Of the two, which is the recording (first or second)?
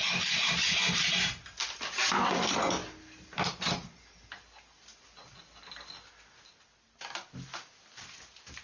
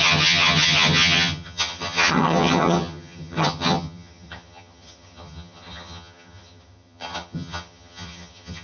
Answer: first